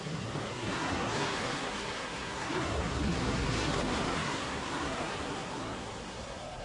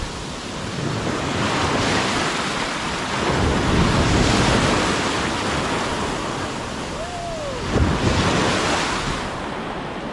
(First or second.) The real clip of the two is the second